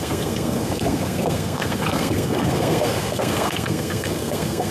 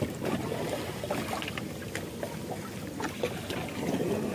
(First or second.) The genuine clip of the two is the second